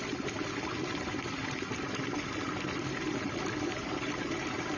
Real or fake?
real